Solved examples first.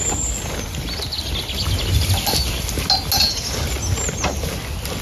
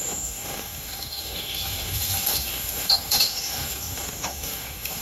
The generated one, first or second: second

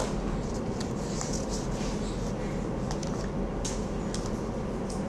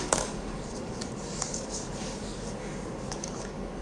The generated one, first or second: second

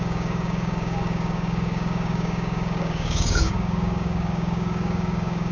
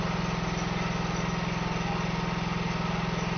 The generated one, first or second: first